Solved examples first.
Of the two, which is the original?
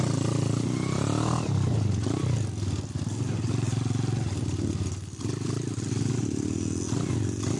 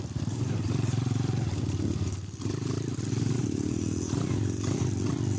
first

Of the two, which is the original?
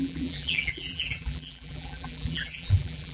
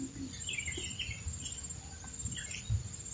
second